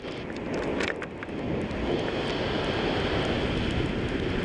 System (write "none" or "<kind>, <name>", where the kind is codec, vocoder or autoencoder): none